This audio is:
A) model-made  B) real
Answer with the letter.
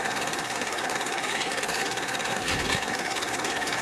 A